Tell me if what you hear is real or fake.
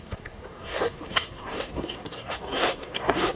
fake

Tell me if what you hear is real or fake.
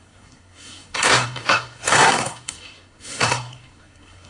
fake